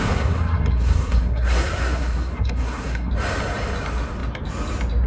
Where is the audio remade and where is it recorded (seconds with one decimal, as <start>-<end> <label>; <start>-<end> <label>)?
0.0-3.1 remade; 3.1-5.1 recorded